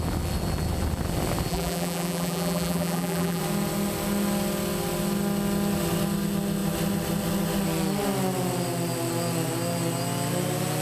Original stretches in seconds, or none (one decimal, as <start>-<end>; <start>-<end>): 0.0-1.5; 3.4-10.8